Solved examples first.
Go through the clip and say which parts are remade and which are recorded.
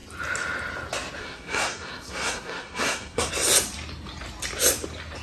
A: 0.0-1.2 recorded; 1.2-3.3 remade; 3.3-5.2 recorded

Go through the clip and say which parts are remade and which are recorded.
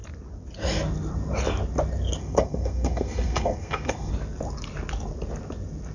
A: 0.0-2.2 recorded; 2.2-4.1 remade; 4.1-5.9 recorded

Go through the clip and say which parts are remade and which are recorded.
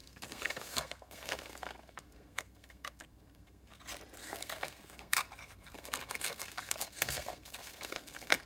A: 0.0-3.8 remade; 3.8-4.2 recorded; 4.2-8.5 remade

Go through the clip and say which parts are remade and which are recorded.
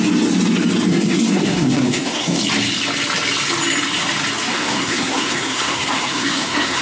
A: 0.0-0.9 recorded; 0.9-2.4 remade; 2.4-4.5 recorded; 4.5-6.8 remade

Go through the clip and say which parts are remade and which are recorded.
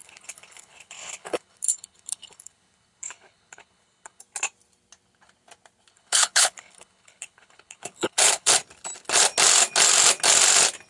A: 0.0-4.2 remade; 4.2-5.9 recorded; 5.9-8.5 remade; 8.5-10.9 recorded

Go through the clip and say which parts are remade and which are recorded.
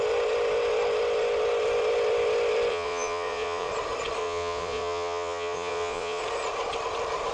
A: 0.0-2.7 recorded; 2.7-3.7 remade; 3.7-4.2 recorded; 4.2-6.2 remade; 6.2-7.3 recorded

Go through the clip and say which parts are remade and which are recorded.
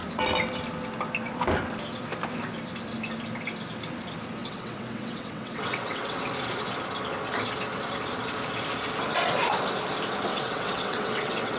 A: 0.0-4.4 recorded; 4.4-6.2 remade; 6.2-10.3 recorded; 10.3-11.6 remade